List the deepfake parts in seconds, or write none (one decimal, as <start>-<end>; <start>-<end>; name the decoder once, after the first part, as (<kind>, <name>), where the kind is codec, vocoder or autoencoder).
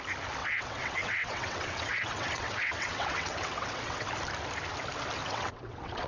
0.4-4.1 (vocoder, WaveNeXt); 5.2-6.1